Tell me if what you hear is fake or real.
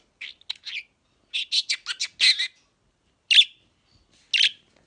real